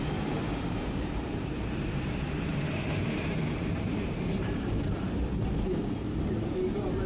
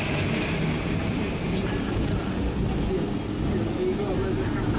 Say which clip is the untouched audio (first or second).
second